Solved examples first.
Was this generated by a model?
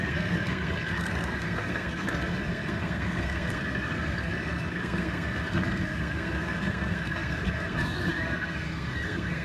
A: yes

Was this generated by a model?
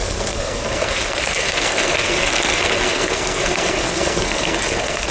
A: yes